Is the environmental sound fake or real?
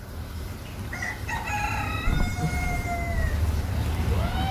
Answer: real